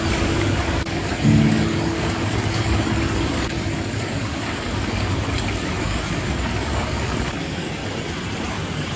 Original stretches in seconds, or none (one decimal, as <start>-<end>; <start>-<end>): 7.8-8.5